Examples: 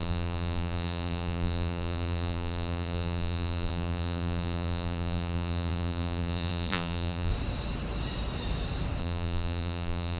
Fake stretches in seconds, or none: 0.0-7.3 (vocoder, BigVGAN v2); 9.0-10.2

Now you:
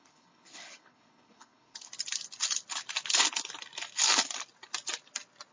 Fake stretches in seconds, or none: 0.0-1.9 (codec, HILCodec)